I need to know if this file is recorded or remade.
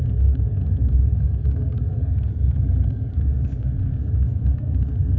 remade